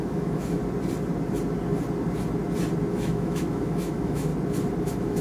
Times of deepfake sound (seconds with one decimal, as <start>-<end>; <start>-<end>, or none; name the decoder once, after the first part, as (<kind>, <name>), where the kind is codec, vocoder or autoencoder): 0.0-0.6 (autoencoder, DAC-VAE); 2.9-4.3; 4.8-5.2